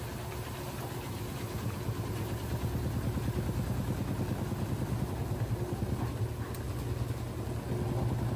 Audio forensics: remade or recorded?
recorded